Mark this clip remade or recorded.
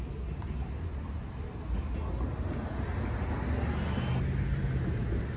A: recorded